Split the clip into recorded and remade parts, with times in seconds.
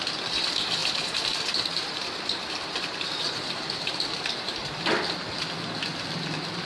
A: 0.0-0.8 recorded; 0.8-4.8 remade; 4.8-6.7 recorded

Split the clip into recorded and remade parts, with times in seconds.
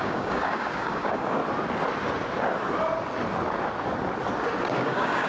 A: 0.0-1.4 remade; 1.4-4.6 recorded; 4.6-5.3 remade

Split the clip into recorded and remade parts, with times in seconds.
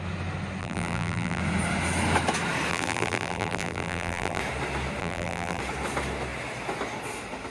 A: 0.0-0.6 recorded; 0.6-1.4 remade; 1.4-2.7 recorded; 2.7-4.4 remade; 4.4-5.0 recorded; 5.0-5.6 remade; 5.6-7.5 recorded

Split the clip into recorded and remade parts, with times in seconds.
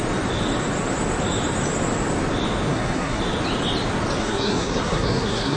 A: 0.0-2.7 recorded; 2.7-3.2 remade; 3.2-4.2 recorded; 4.2-5.6 remade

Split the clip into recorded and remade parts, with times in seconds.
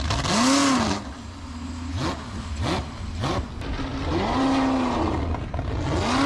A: 0.0-6.3 recorded